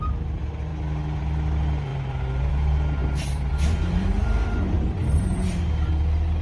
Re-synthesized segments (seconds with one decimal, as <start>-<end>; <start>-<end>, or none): 3.0-5.9